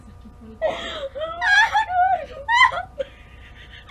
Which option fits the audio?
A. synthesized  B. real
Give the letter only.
B